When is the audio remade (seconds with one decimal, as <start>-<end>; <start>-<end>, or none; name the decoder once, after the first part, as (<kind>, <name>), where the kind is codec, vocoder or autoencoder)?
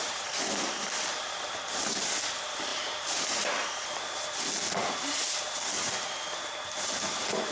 none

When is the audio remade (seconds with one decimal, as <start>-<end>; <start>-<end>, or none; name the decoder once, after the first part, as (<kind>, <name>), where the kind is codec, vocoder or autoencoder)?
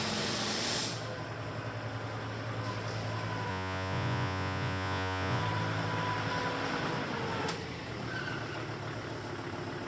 3.5-5.4 (vocoder, Vocos)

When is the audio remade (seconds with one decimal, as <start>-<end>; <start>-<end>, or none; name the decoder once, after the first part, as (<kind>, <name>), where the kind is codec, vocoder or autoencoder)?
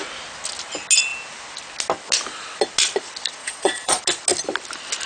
3.4-4.0 (vocoder, Vocos)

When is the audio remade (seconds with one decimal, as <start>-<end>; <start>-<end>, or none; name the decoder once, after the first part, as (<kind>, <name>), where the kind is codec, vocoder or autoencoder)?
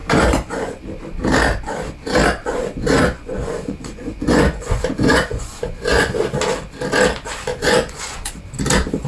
0.0-0.8 (vocoder, Vocos); 2.4-6.2; 7.5-8.3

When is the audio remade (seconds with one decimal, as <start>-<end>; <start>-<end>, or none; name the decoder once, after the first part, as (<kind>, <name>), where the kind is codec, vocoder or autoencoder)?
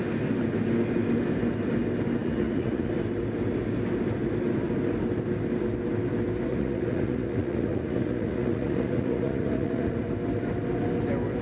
2.2-2.9 (vocoder, Vocos); 6.5-10.0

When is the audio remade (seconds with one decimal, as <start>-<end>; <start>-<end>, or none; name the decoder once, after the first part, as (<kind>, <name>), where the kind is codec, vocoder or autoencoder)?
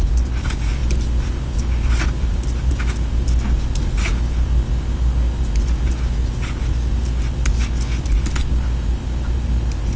none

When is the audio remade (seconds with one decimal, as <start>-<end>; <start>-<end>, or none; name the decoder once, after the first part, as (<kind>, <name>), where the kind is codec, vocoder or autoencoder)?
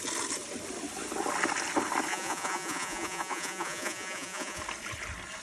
2.1-4.6 (vocoder, Vocos)